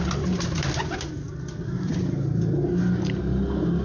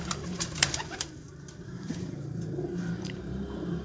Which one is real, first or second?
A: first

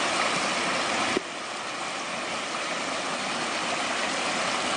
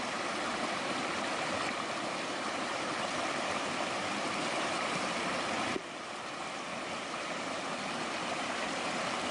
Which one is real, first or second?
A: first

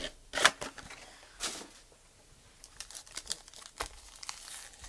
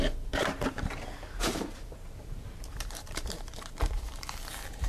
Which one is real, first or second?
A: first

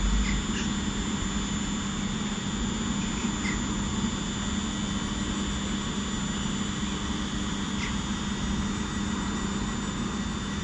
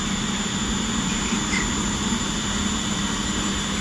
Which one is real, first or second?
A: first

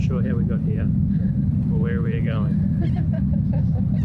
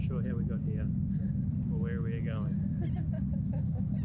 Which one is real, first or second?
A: second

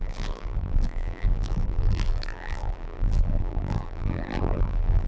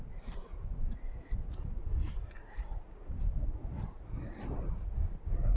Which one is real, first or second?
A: second